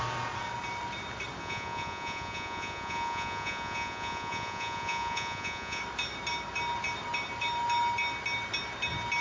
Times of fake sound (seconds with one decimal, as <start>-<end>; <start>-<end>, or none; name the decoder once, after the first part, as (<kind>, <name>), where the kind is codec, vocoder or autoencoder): 1.4-5.8 (vocoder, Vocos)